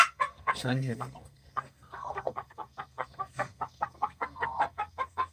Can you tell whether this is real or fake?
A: fake